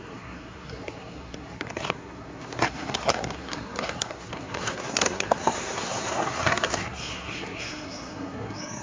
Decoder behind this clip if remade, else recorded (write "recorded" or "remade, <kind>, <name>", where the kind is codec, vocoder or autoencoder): remade, codec, SNAC